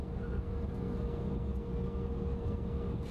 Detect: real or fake fake